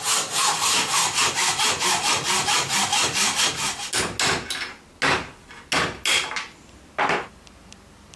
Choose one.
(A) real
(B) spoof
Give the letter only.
A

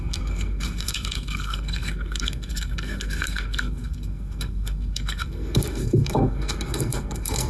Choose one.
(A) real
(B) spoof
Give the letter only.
B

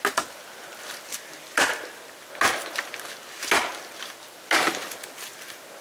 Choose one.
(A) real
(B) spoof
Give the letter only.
A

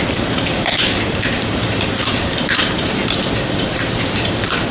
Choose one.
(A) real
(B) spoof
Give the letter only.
B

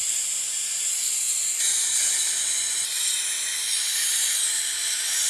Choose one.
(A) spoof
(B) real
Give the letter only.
B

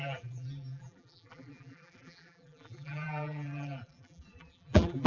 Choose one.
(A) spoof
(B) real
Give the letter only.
A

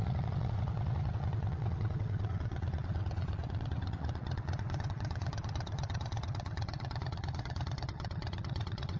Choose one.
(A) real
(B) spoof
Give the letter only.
B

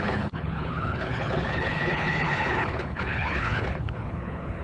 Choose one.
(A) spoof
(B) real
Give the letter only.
A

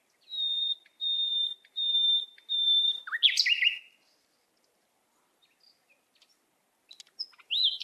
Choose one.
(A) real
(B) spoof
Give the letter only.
A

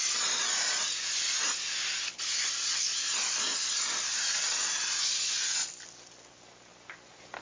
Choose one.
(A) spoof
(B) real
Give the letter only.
B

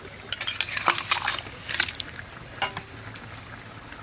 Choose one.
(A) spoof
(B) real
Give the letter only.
B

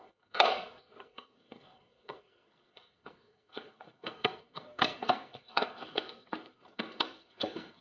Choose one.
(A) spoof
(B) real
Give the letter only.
A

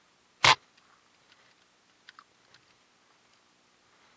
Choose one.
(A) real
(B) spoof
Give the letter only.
A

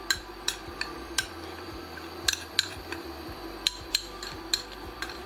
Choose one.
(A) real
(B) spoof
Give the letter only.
B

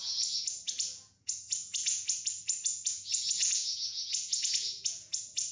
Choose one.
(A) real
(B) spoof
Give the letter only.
B